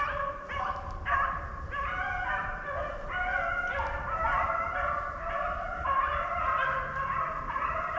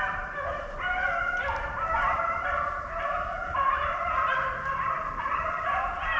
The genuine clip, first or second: first